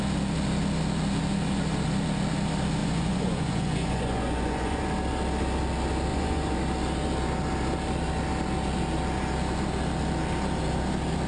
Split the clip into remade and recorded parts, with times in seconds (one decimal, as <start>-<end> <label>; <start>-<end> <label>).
0.0-2.8 recorded; 2.8-4.8 remade; 4.8-6.1 recorded; 6.1-6.6 remade; 6.6-11.3 recorded